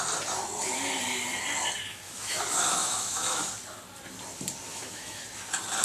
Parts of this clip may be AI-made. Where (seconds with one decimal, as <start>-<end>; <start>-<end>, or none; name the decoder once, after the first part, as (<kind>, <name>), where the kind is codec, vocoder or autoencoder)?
1.9-2.4 (autoencoder, DAC-VAE); 2.8-3.5; 4.7-5.2